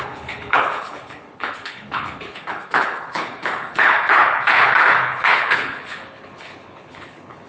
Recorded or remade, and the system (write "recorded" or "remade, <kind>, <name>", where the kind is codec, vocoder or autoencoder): remade, codec, HILCodec